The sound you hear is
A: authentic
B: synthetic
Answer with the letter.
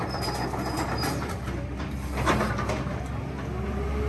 A